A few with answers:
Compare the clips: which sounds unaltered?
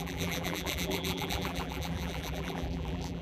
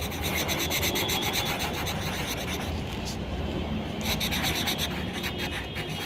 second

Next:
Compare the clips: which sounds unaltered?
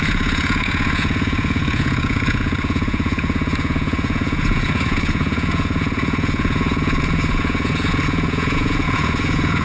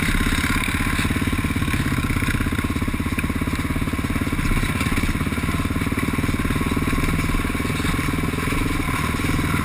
second